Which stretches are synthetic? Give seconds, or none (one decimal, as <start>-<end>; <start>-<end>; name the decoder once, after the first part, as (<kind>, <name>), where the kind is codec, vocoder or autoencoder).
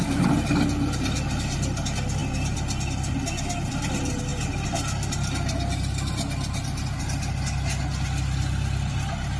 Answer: none